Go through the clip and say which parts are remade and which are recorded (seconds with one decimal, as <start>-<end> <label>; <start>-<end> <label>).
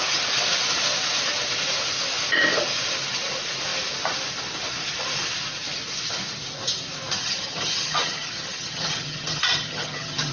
0.0-7.2 recorded; 7.2-10.3 remade